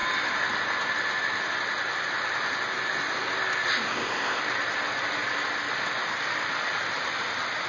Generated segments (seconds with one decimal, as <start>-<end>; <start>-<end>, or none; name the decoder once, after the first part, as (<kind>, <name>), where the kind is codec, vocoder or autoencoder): 3.9-4.4 (codec, ZipCodec)